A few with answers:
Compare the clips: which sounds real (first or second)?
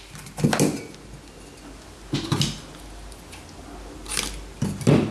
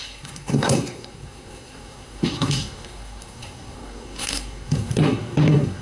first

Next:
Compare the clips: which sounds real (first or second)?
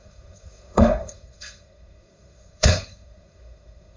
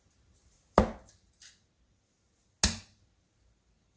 second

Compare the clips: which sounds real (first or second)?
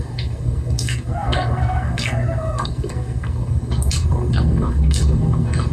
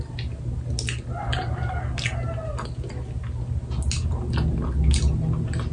second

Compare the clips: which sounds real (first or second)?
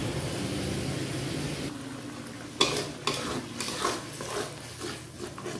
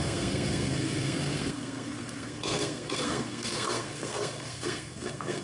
first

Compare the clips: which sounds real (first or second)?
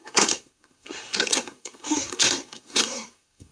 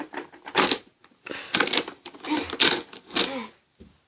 second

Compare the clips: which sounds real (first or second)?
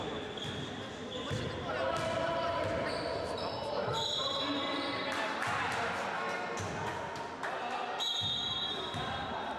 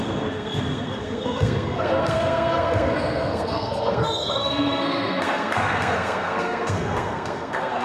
first